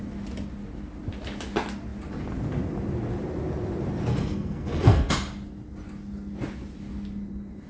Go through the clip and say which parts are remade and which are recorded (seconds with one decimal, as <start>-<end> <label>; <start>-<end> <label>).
0.0-4.1 recorded; 4.1-5.1 remade; 5.1-7.7 recorded